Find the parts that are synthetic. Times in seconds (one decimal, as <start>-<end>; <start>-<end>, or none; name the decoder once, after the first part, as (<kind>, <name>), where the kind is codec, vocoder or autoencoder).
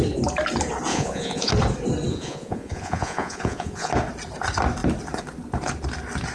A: 0.9-1.5 (vocoder, Vocos); 2.1-3.9